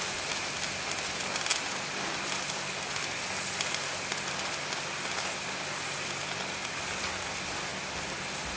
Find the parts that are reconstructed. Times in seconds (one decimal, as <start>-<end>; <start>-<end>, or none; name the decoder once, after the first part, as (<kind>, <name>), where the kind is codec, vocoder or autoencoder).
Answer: none